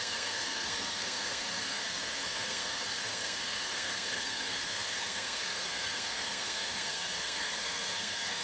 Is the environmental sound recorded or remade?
remade